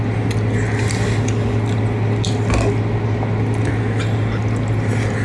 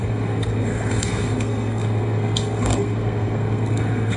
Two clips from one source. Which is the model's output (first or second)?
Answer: second